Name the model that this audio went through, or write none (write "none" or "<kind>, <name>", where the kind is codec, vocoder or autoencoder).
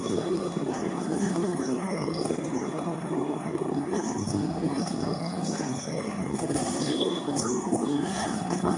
codec, SNAC